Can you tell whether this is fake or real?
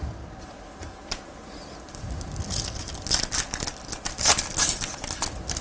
real